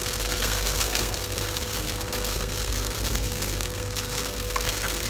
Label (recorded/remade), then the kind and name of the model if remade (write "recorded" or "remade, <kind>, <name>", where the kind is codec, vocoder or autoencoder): remade, codec, SNAC